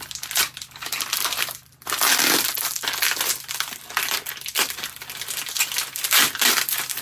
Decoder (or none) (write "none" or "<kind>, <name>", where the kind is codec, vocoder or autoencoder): none